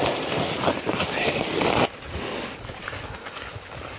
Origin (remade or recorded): recorded